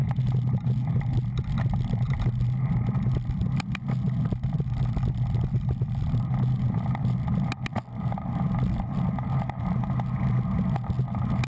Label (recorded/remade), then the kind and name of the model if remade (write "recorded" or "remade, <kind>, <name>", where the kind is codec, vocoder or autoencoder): recorded